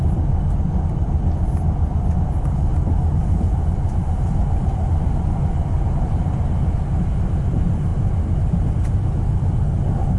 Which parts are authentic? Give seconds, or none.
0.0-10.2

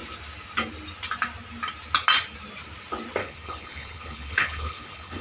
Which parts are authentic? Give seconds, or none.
0.0-3.2

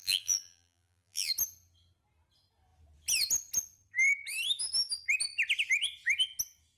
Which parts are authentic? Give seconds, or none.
1.3-6.8

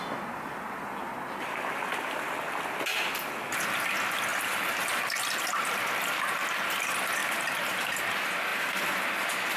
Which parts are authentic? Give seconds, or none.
0.0-4.3; 6.8-7.2; 8.0-9.6

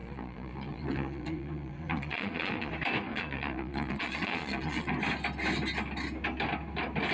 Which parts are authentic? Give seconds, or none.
2.7-3.1; 4.9-7.1

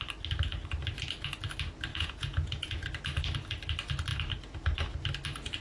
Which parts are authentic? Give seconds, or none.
0.0-1.9; 2.8-5.6

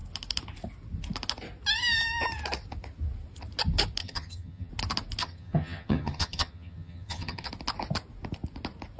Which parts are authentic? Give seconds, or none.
0.0-4.0; 4.7-5.2; 7.5-9.0